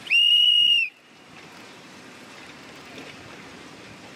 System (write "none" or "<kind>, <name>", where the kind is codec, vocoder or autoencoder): vocoder, BigVGAN v2